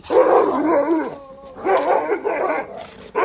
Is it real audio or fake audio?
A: real